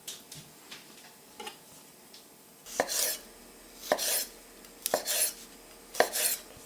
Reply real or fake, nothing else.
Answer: real